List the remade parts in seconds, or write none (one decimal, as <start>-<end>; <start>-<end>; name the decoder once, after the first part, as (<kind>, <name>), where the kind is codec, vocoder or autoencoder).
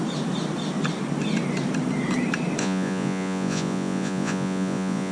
2.6-5.1 (vocoder, Vocos)